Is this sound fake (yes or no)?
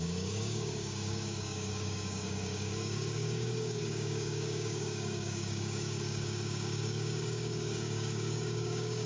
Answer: yes